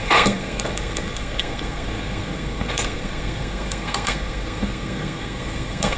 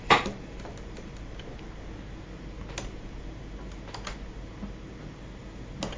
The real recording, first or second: second